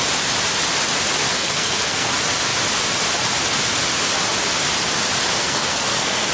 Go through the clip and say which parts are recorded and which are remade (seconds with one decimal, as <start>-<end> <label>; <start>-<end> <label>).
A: 0.0-1.3 recorded; 1.3-2.1 remade; 2.1-5.4 recorded; 5.4-6.3 remade